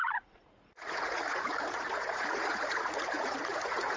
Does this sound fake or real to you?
fake